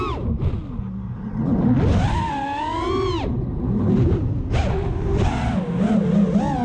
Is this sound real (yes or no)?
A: yes